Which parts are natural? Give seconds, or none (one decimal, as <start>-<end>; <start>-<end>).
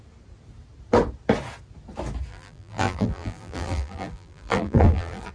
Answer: 0.0-2.3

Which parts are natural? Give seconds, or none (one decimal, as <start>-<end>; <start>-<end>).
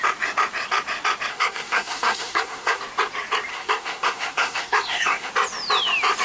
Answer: 0.0-1.3; 2.8-3.5; 5.3-6.2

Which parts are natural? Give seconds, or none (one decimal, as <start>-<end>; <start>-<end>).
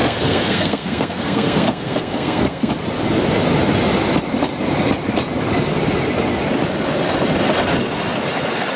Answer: 2.7-8.8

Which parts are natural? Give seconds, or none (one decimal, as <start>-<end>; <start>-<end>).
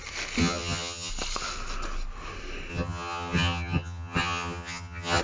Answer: 0.0-0.4; 1.1-2.7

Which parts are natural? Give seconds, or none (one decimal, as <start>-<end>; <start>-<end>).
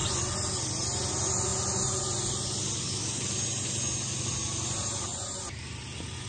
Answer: 0.0-6.3